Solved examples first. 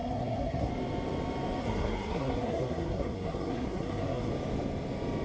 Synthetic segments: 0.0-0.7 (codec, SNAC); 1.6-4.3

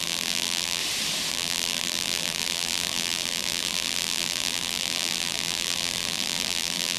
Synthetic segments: 0.0-0.8 (vocoder, BigVGAN v2); 1.3-7.0

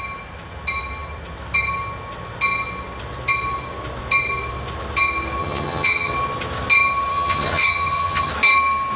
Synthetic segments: 5.4-6.1 (vocoder, HiFi-GAN); 7.1-8.3

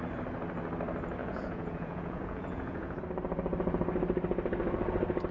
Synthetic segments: 1.2-3.0 (vocoder, Vocos)

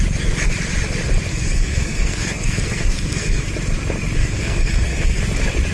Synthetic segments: 1.3-3.5 (codec, SNAC); 4.2-5.2